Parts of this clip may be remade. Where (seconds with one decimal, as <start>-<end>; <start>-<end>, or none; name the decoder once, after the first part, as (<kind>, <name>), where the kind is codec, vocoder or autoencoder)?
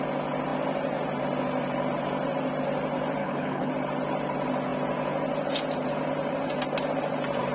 3.2-3.7 (codec, HILCodec)